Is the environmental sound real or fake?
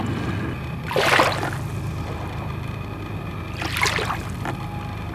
real